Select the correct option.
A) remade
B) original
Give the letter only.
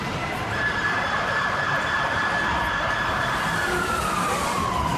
A